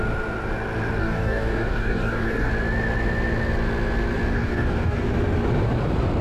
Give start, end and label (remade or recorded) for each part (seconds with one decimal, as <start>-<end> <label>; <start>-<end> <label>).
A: 0.0-1.0 recorded; 1.0-2.5 remade; 2.5-4.3 recorded; 4.3-5.1 remade; 5.1-6.2 recorded